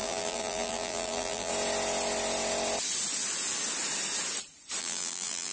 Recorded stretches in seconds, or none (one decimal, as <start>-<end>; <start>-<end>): 1.5-4.8